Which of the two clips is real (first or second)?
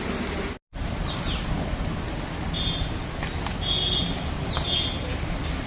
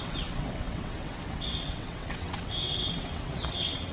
first